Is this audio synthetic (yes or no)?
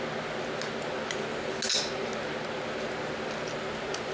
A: no